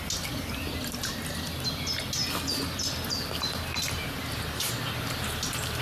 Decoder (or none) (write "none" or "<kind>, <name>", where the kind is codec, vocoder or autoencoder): none